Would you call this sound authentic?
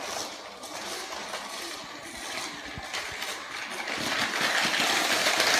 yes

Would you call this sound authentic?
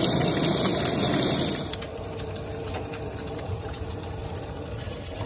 no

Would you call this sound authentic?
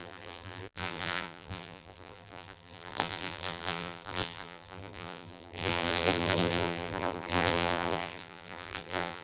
no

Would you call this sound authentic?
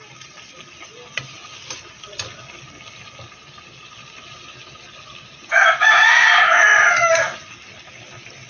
yes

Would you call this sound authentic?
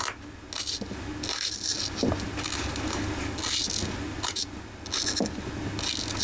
yes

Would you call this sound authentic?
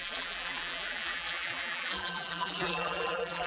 no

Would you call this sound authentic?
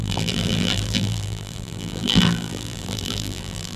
no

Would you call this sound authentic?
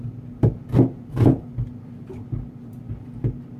yes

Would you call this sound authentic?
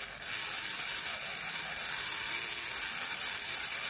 yes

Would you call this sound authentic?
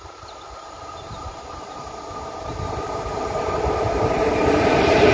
no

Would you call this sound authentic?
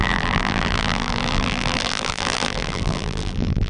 no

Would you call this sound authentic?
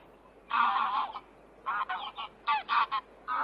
yes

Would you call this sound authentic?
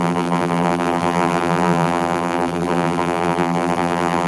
no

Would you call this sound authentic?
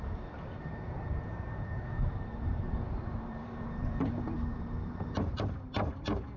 no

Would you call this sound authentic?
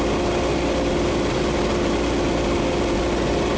yes